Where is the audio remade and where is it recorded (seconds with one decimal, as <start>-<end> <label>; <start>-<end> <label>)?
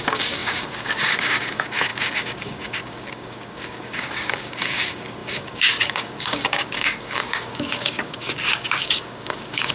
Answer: 0.0-9.7 remade